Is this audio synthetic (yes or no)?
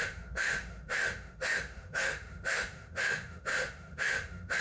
yes